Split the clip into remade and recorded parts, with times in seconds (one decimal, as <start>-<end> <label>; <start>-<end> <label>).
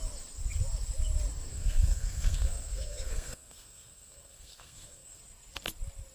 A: 0.0-1.5 recorded; 1.5-5.2 remade; 5.2-6.1 recorded